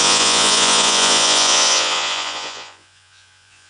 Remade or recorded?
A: remade